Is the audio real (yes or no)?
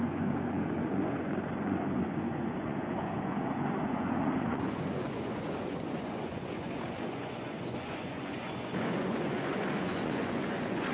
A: no